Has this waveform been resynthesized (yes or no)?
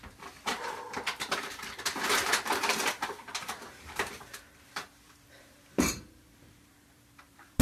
yes